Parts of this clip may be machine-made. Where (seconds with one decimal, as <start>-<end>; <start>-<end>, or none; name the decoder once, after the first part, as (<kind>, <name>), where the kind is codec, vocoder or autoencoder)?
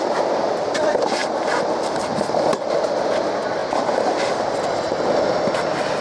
none